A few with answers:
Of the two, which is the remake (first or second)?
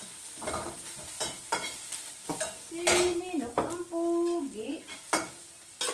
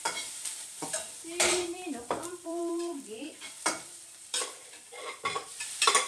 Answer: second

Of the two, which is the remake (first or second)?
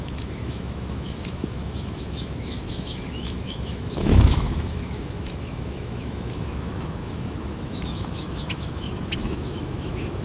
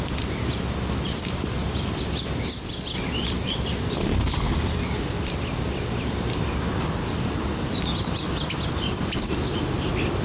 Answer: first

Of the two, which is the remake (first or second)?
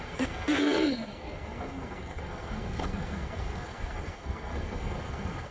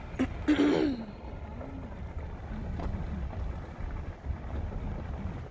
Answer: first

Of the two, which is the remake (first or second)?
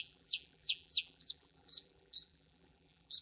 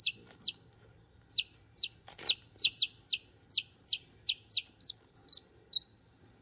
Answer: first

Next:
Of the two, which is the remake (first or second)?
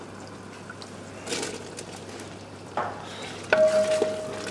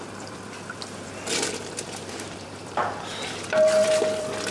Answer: second